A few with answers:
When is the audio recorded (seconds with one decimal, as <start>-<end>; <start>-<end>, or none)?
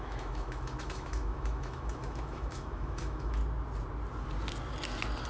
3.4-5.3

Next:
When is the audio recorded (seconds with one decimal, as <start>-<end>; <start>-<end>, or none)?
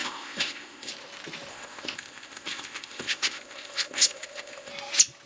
0.9-1.5; 4.7-5.3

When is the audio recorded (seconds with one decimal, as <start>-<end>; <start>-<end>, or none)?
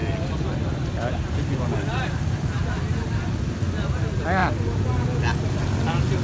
0.0-6.2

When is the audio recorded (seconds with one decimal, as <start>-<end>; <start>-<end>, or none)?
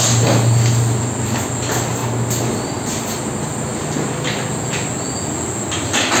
0.0-6.2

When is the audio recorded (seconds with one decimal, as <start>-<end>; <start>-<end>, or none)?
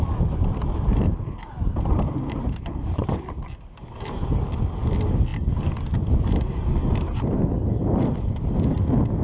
0.0-9.2